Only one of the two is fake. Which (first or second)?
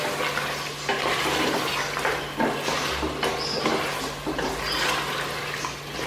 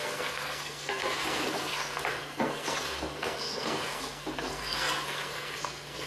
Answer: second